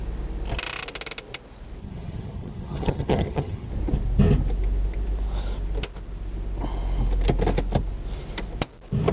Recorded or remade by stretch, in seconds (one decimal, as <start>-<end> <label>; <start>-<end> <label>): 0.0-1.8 recorded; 1.8-3.7 remade; 3.7-9.1 recorded